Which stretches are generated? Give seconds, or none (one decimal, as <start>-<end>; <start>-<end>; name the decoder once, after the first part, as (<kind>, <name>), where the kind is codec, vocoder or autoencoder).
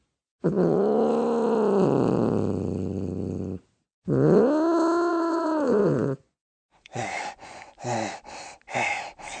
5.1-7.7 (vocoder, Vocos)